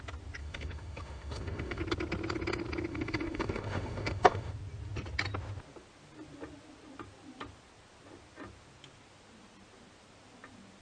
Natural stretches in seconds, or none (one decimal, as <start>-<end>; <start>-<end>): 0.0-0.4; 1.8-2.9; 4.5-10.8